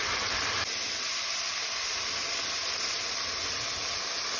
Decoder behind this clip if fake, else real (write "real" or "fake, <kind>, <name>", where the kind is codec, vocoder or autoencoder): real